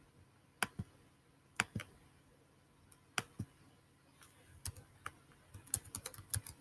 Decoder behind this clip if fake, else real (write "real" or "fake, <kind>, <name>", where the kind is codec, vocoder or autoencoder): real